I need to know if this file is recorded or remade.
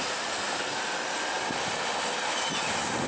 recorded